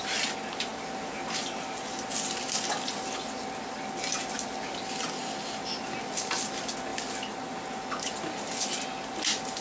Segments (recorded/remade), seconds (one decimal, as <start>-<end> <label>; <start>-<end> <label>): 0.0-9.6 recorded